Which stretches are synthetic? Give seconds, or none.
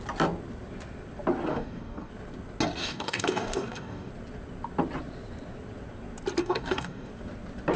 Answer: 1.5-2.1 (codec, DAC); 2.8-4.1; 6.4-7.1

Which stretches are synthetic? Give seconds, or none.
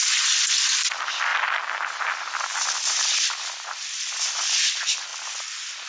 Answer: none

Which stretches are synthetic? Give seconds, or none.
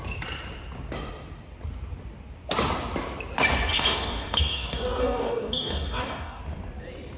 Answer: 3.7-6.4 (codec, DAC)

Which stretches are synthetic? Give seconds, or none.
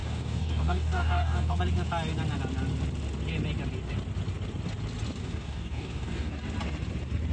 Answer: 0.0-1.6 (codec, DAC); 5.2-6.3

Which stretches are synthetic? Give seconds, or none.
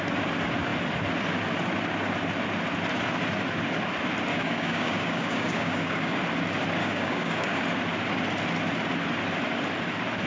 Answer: 4.3-6.2 (codec, DAC); 6.8-7.6